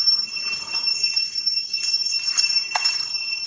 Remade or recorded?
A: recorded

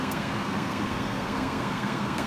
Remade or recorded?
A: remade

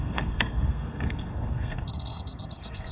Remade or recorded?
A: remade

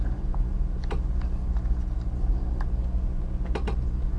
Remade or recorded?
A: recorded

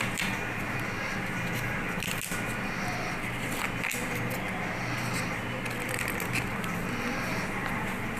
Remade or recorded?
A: recorded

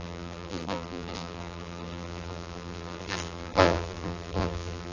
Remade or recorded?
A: remade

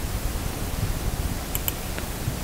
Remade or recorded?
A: recorded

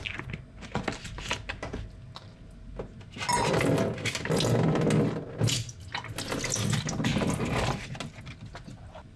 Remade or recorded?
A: recorded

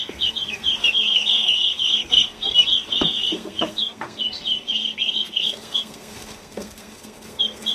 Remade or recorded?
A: remade